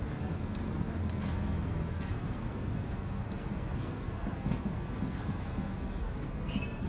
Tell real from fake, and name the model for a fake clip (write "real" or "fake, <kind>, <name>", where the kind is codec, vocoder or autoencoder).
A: fake, codec, SNAC